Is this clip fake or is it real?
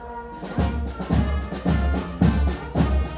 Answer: real